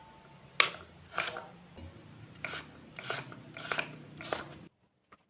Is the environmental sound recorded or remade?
recorded